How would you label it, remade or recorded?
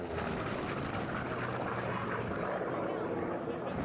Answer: recorded